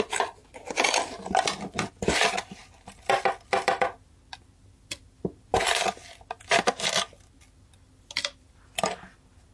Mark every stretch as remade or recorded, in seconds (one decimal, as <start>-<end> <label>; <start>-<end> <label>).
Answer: 0.0-9.5 recorded